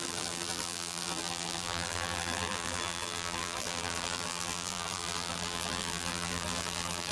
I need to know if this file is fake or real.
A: fake